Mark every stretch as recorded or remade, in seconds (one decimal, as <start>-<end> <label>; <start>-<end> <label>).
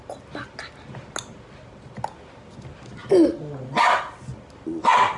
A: 0.0-5.2 recorded